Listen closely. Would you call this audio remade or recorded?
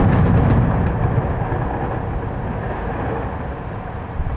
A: recorded